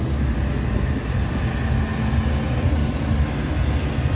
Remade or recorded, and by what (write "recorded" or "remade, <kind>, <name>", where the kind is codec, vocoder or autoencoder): recorded